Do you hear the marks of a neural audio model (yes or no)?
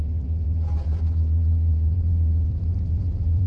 yes